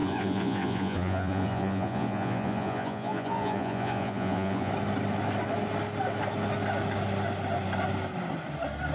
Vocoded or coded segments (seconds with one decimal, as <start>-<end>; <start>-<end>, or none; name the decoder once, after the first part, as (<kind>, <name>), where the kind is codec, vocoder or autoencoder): 0.0-4.7 (vocoder, Vocos)